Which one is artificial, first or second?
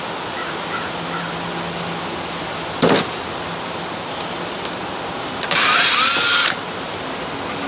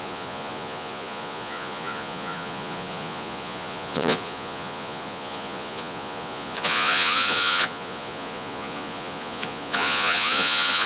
second